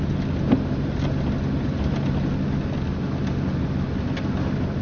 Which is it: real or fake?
real